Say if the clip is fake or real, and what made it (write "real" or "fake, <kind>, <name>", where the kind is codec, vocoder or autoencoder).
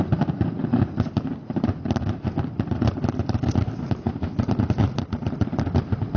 real